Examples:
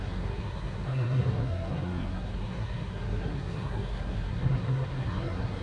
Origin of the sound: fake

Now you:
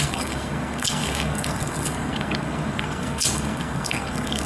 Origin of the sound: fake